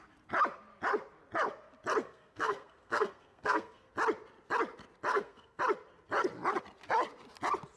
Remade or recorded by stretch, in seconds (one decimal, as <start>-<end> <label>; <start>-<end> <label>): 0.0-2.0 recorded; 2.0-3.9 remade; 3.9-5.1 recorded; 5.1-5.6 remade; 5.6-7.8 recorded